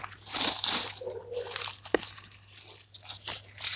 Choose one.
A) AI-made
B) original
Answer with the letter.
B